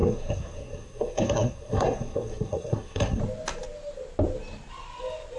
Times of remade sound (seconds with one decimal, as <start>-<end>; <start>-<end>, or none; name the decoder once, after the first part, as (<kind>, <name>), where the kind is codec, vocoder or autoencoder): 0.0-3.2 (codec, SNAC)